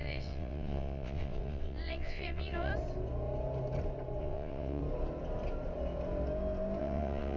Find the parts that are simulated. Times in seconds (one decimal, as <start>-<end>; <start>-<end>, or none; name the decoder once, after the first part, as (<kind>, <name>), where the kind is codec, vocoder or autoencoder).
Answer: 0.0-2.7 (vocoder, WaveNeXt); 4.2-4.8; 6.8-7.4